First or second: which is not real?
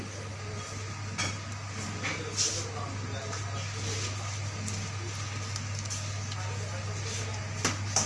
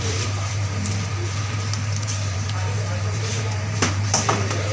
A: second